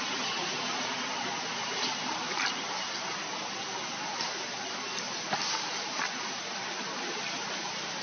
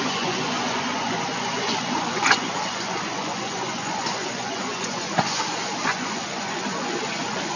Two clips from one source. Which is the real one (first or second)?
first